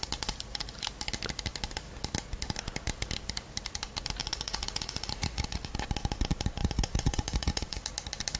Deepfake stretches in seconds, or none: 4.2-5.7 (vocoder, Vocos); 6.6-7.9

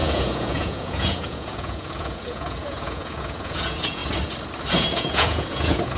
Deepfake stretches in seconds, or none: 0.0-4.0 (vocoder, Vocos); 4.7-6.0

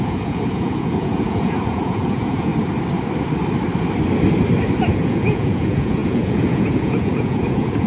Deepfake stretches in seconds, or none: 0.0-2.5 (vocoder, Vocos); 4.9-7.9